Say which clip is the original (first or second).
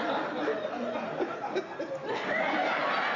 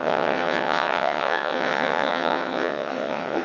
first